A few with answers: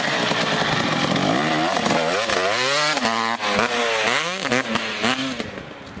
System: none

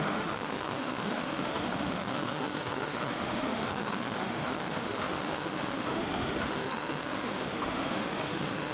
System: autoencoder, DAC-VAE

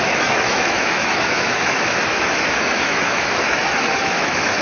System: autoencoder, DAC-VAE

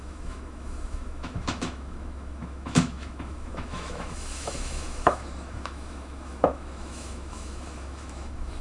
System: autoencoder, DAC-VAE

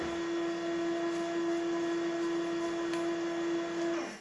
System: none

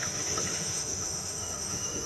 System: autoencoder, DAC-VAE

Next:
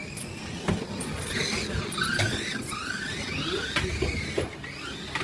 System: none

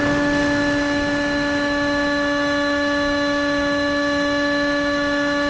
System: autoencoder, DAC-VAE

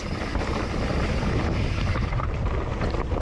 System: none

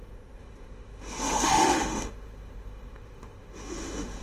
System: autoencoder, DAC-VAE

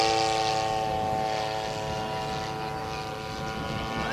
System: none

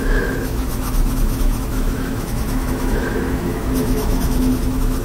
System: autoencoder, DAC-VAE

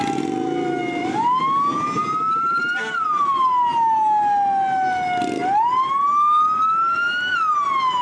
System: none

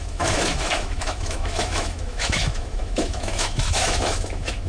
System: autoencoder, DAC-VAE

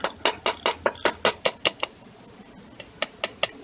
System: none